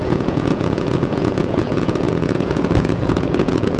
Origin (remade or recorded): remade